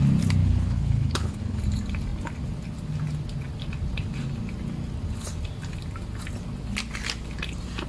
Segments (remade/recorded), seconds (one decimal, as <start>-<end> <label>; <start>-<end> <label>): 0.0-0.4 recorded; 0.4-1.6 remade; 1.6-7.9 recorded